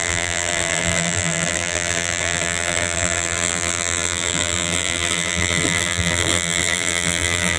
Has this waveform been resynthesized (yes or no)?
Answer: yes